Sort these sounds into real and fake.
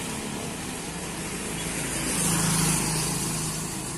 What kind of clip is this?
real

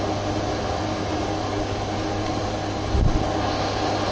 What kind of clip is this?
real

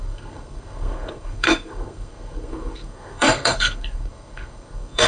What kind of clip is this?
fake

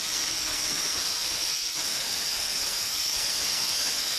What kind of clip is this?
fake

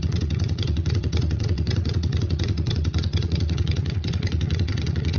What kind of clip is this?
fake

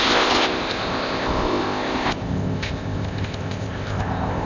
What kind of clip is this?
fake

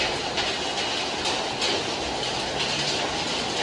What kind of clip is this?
real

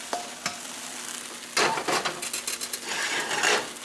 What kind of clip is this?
real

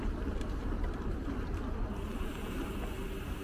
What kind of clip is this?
fake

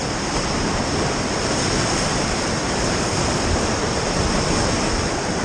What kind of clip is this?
fake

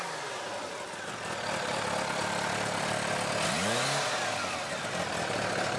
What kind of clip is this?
real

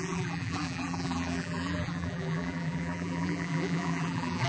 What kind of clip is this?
fake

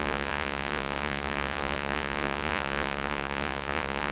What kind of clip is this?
fake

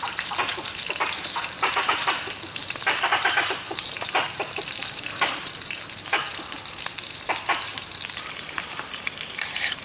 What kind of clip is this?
fake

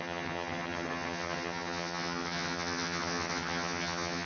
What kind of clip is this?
fake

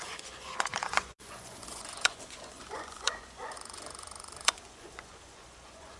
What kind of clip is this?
fake